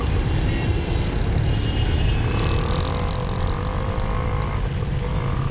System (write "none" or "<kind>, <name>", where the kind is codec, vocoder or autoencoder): none